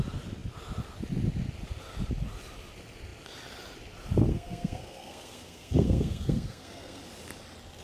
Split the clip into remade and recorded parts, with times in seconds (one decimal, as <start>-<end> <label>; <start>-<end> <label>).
0.0-4.3 recorded; 4.3-7.0 remade; 7.0-7.8 recorded